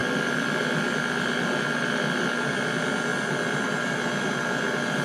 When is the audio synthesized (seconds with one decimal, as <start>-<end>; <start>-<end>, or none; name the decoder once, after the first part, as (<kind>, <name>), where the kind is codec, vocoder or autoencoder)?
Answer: none